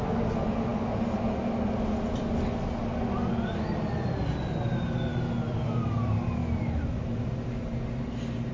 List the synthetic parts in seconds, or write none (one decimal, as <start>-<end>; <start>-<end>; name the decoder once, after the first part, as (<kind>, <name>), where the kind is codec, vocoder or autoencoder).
none